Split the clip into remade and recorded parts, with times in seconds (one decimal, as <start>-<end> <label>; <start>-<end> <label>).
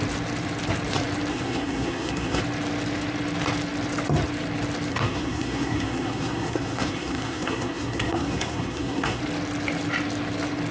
0.0-1.3 recorded; 1.3-2.4 remade; 2.4-4.9 recorded; 4.9-9.2 remade; 9.2-10.7 recorded